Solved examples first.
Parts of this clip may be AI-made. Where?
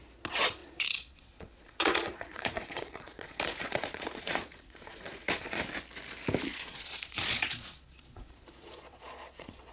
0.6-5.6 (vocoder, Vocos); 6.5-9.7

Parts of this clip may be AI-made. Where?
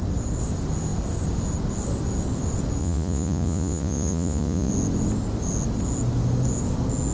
2.8-4.7 (vocoder, Vocos)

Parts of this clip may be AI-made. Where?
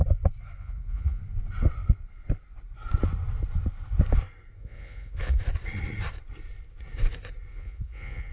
0.6-1.2 (vocoder, Vocos); 4.6-5.4; 7.5-8.3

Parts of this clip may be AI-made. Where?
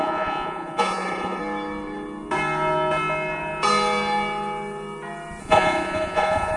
0.0-1.4 (vocoder, Vocos); 5.4-6.6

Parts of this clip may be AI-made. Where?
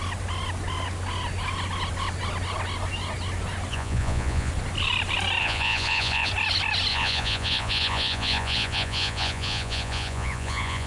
3.7-4.5 (vocoder, Vocos); 5.4-6.3; 6.9-10.9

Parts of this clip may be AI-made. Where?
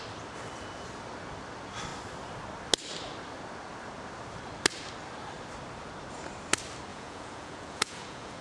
6.9-8.4 (vocoder, Vocos)